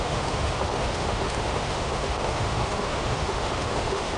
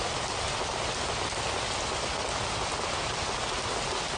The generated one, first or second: first